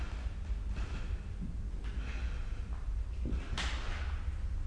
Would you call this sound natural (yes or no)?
yes